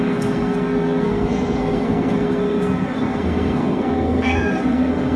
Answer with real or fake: fake